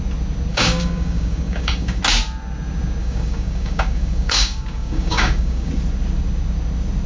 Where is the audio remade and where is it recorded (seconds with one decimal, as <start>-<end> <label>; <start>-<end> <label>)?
0.0-0.5 recorded; 0.5-2.0 remade; 2.0-3.0 recorded; 3.0-5.7 remade; 5.7-7.1 recorded